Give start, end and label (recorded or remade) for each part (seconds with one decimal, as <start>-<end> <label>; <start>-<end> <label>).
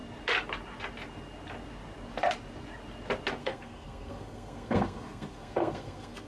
0.0-3.4 recorded; 3.4-6.3 remade